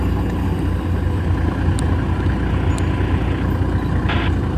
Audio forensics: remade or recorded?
recorded